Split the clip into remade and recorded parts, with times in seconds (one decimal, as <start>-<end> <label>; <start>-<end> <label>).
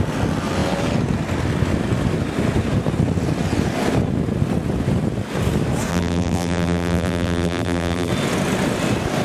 0.0-5.9 recorded; 5.9-8.1 remade; 8.1-9.2 recorded